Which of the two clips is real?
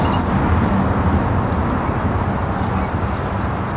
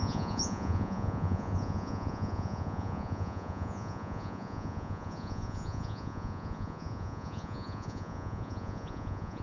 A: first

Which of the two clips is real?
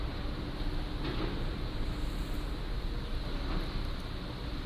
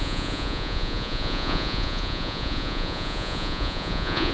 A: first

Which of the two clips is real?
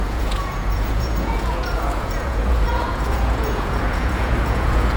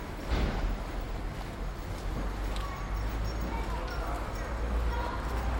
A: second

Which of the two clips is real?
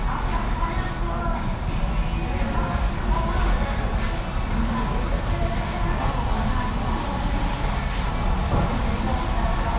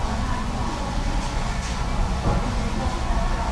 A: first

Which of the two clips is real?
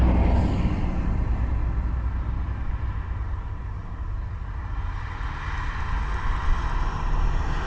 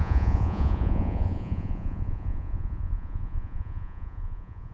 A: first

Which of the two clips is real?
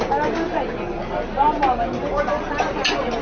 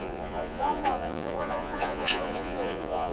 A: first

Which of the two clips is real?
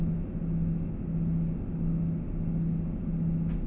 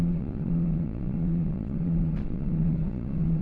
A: first